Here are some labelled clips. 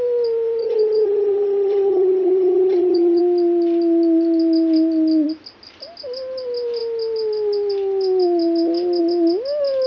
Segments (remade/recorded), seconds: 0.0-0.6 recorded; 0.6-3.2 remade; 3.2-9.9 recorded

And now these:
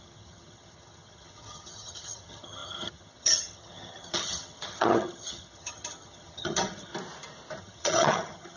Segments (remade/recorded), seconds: 0.0-6.9 remade; 6.9-7.6 recorded; 7.6-8.6 remade